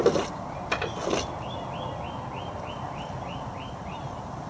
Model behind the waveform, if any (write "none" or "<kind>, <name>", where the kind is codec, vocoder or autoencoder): none